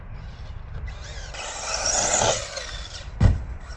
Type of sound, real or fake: real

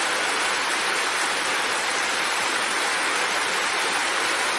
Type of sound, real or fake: real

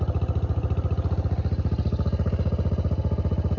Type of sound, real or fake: real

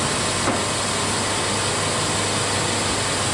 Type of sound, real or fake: real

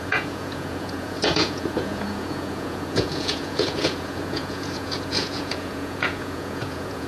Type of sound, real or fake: fake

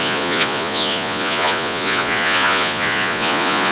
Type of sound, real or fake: fake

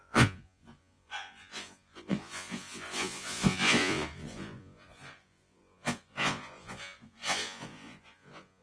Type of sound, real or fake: fake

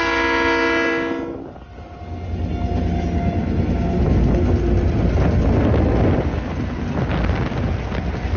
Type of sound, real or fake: real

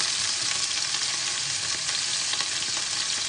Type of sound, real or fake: real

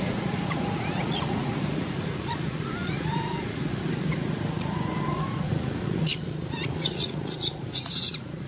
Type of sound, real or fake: fake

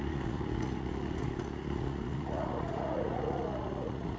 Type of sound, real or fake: fake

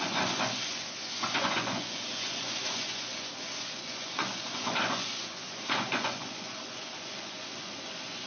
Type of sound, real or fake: fake